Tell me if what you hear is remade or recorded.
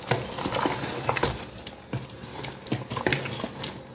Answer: recorded